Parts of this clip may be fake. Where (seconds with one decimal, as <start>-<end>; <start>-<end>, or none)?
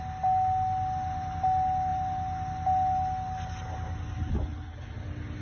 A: none